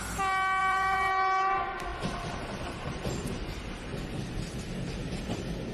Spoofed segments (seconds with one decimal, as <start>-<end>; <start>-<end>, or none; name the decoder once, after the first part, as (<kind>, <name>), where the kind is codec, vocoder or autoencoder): 0.6-1.1 (vocoder, BigVGAN v2); 1.9-3.4; 3.9-4.4